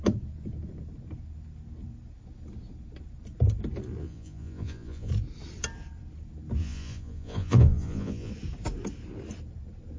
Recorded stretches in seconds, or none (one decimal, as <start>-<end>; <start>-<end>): 0.0-4.0; 5.1-6.6; 8.3-10.0